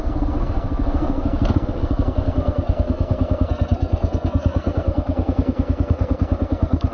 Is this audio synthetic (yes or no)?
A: yes